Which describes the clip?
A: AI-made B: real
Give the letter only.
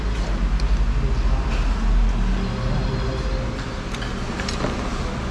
B